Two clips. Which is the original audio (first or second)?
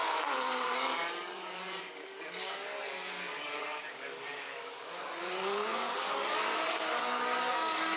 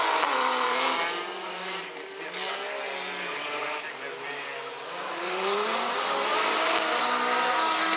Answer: second